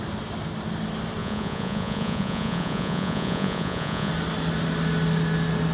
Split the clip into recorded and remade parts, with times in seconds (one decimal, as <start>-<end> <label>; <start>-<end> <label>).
0.0-1.2 recorded; 1.2-4.1 remade; 4.1-5.7 recorded